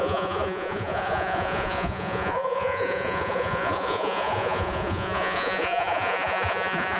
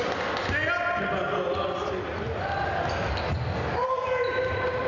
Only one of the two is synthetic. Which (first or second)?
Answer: first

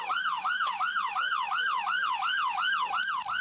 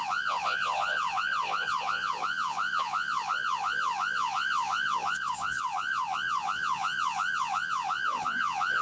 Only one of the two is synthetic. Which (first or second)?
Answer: second